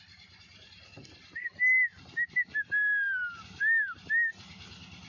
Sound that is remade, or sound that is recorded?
recorded